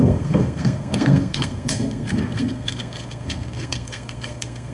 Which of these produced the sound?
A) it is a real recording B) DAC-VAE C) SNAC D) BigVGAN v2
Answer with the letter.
C